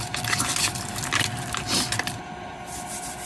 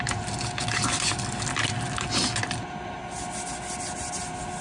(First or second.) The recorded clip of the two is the second